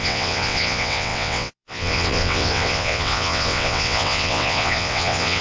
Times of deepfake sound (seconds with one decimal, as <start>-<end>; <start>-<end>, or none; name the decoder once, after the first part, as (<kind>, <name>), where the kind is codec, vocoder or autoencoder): 0.0-5.4 (vocoder, WaveNeXt)